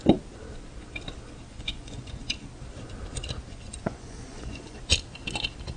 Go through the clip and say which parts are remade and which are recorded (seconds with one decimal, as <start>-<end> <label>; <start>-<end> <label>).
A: 0.0-1.5 recorded; 1.5-2.5 remade; 2.5-3.5 recorded; 3.5-4.8 remade; 4.8-5.8 recorded